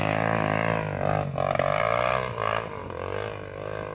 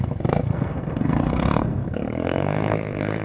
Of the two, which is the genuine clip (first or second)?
first